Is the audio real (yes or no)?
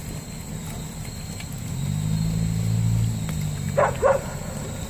yes